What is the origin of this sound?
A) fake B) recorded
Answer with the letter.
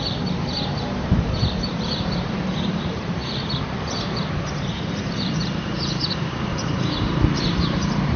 A